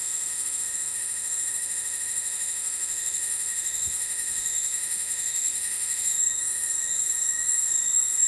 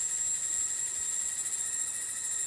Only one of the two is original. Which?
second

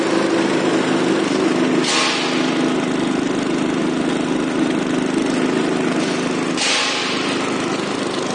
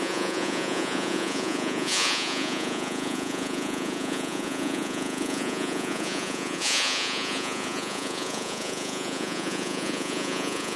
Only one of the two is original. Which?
first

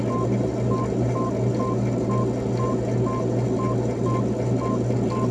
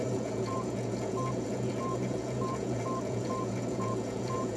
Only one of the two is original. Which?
first